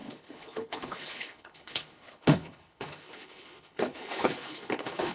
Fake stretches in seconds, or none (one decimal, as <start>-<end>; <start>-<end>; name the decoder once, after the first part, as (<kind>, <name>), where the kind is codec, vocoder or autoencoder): 0.0-5.1 (codec, HILCodec)